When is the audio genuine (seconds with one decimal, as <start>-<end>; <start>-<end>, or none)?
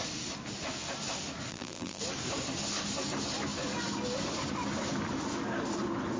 0.0-1.5; 2.0-6.2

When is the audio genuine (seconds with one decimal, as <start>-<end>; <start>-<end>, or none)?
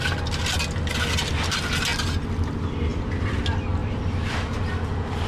0.0-2.9; 3.4-3.8; 4.7-5.3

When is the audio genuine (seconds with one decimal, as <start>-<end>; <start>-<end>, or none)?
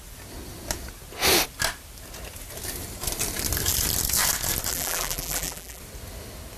0.0-4.7; 5.8-6.6